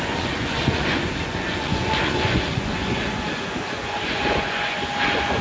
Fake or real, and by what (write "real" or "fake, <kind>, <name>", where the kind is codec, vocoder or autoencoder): fake, vocoder, Vocos